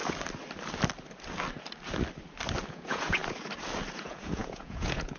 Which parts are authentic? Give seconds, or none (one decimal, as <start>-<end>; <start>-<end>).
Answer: 0.0-2.7; 3.2-3.9